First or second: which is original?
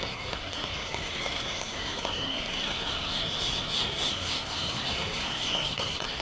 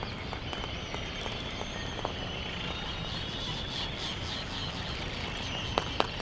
second